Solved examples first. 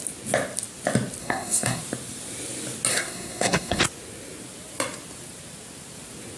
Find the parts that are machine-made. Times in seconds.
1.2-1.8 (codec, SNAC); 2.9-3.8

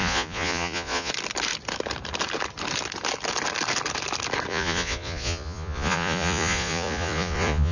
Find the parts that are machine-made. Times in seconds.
0.0-1.1 (vocoder, Vocos); 4.5-7.7